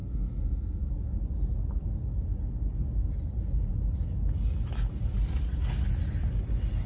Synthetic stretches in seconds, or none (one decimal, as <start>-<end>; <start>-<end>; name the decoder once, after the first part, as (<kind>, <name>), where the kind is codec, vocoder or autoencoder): 0.0-0.9 (codec, SNAC)